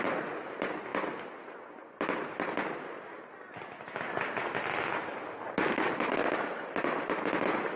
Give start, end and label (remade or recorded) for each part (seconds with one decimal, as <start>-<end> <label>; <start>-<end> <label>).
0.0-7.8 recorded